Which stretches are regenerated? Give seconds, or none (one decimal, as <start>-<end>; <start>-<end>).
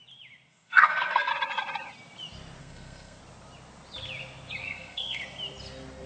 0.5-1.3; 2.6-3.2; 4.6-5.2